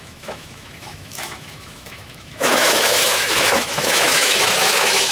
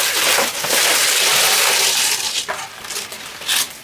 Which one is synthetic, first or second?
first